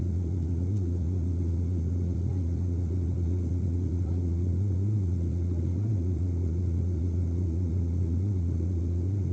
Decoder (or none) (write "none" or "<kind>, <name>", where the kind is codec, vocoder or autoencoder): vocoder, Vocos